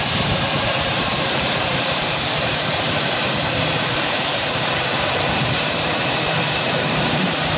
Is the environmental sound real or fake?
fake